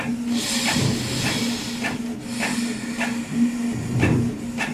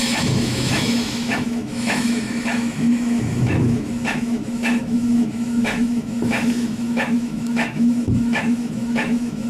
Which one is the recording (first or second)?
first